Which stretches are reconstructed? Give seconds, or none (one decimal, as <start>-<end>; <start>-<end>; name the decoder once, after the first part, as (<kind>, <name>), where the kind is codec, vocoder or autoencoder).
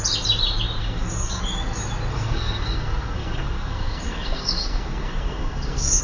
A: 0.8-1.4 (codec, SNAC); 2.1-6.0